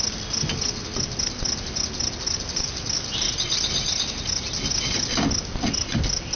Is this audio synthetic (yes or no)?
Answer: no